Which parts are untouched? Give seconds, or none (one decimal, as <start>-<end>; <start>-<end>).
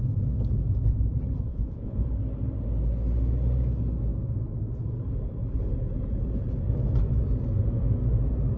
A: 0.0-1.5; 2.1-8.6